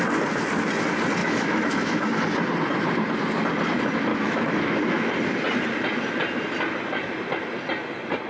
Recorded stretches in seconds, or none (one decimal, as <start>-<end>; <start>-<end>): 0.0-1.2; 2.2-4.1; 5.1-8.3